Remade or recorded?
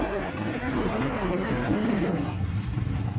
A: remade